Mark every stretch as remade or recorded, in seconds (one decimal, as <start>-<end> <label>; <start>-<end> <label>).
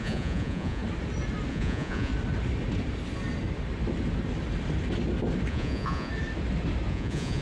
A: 0.0-0.8 remade; 0.8-1.5 recorded; 1.5-2.1 remade; 2.1-5.5 recorded; 5.5-6.1 remade; 6.1-6.9 recorded; 6.9-7.4 remade